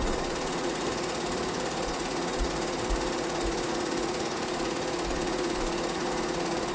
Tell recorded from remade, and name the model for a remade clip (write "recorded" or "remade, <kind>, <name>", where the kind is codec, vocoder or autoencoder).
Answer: remade, vocoder, Vocos